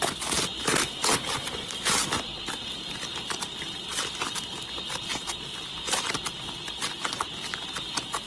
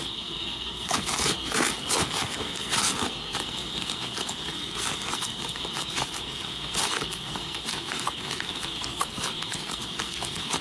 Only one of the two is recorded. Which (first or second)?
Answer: first